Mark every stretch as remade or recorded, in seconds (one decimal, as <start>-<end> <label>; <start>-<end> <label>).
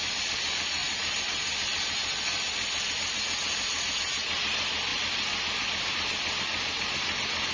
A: 0.0-7.5 recorded